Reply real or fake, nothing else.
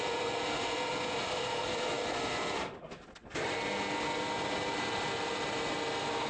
real